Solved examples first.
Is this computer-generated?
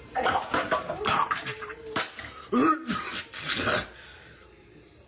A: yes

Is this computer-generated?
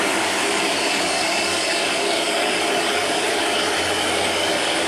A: yes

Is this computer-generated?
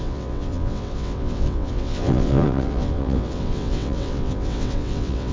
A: yes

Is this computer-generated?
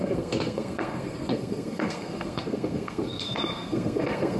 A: yes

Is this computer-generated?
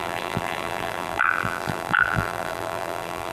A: yes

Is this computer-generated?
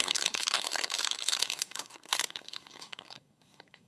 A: yes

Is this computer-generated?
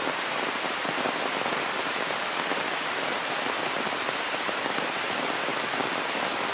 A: no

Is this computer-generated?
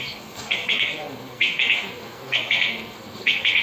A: yes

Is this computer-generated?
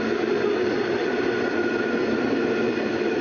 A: no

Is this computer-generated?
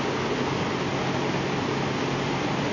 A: no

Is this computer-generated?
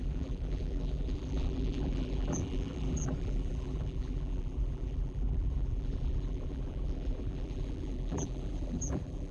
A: yes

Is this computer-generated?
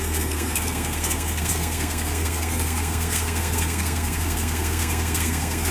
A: yes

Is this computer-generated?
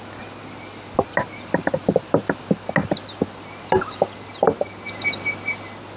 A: no